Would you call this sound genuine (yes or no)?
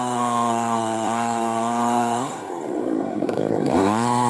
no